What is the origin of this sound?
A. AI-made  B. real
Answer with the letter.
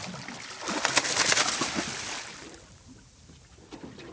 B